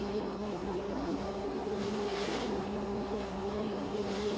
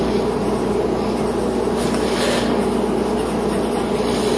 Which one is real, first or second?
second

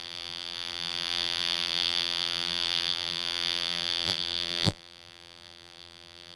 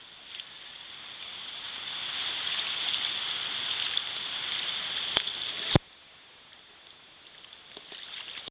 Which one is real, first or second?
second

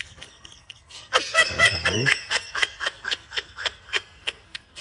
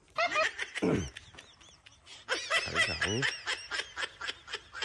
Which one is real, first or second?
second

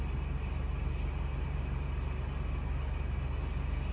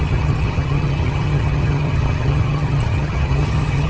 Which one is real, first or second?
first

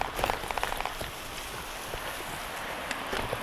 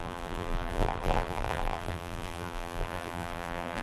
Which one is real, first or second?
first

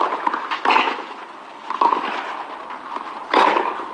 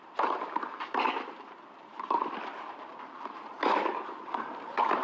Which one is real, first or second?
first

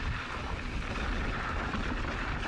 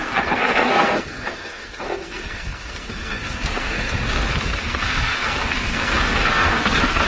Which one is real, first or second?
first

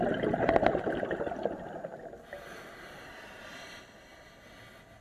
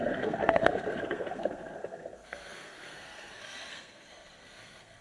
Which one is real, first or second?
first